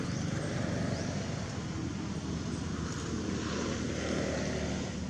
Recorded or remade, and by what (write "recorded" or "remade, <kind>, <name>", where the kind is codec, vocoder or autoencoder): recorded